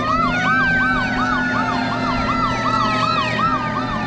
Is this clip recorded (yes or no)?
yes